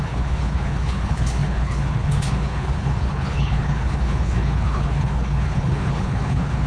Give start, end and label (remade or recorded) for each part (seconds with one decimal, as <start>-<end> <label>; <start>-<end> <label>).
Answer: 0.0-6.7 remade